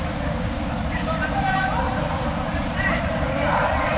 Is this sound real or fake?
fake